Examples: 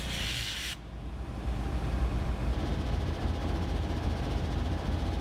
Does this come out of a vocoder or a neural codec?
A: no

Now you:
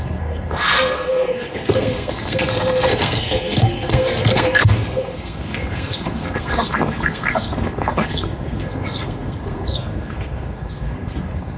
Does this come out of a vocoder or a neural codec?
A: yes